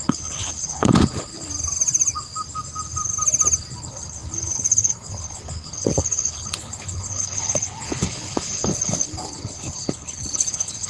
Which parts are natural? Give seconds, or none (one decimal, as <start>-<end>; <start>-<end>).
1.3-3.8